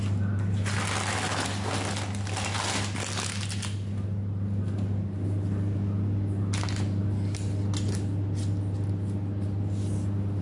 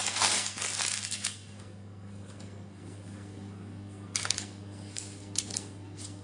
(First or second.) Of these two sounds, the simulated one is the second